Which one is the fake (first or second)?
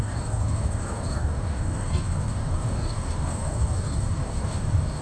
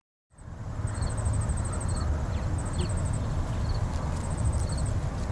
first